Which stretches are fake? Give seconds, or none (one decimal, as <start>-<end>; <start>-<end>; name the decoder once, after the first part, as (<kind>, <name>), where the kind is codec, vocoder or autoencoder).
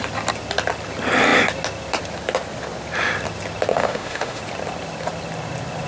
3.7-4.4 (autoencoder, DAC-VAE)